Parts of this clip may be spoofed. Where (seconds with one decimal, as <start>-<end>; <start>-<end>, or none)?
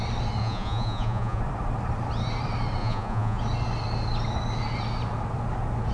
0.4-1.4; 2.8-3.4